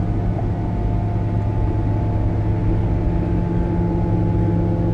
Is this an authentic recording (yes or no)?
yes